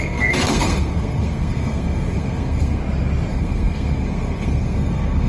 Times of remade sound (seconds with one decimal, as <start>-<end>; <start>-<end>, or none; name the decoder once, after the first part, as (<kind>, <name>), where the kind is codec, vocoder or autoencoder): 0.0-2.8 (codec, SNAC); 3.3-5.3